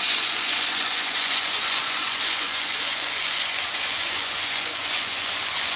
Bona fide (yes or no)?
no